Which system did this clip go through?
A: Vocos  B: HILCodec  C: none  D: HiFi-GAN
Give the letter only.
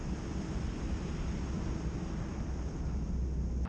C